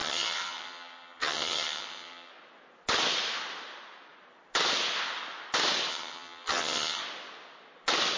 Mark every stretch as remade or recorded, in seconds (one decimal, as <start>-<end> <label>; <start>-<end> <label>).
0.0-2.3 remade; 2.3-5.9 recorded; 5.9-7.0 remade; 7.0-8.2 recorded